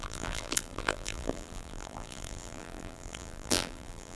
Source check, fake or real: fake